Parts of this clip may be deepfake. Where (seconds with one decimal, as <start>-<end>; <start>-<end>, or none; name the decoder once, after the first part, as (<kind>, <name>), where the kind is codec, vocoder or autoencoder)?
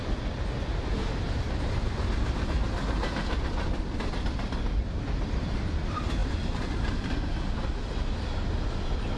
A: none